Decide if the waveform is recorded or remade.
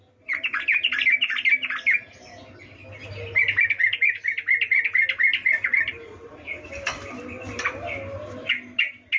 recorded